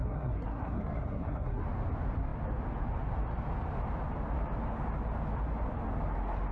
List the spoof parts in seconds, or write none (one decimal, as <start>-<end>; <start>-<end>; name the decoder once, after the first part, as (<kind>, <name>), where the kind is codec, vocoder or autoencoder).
0.0-1.6 (codec, SNAC)